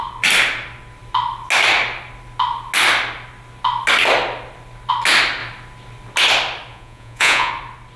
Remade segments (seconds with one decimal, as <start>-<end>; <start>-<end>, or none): 6.7-7.5